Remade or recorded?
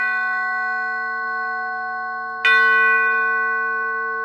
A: recorded